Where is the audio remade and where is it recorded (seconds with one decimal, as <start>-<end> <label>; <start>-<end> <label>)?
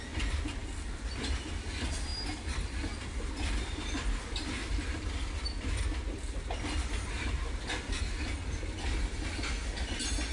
0.0-10.3 recorded